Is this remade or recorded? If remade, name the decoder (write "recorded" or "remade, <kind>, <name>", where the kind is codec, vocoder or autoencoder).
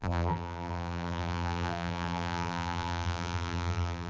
remade, vocoder, BigVGAN v2